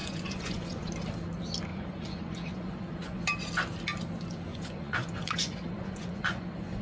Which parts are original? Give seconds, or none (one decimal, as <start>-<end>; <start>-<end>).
0.9-1.7; 3.2-4.5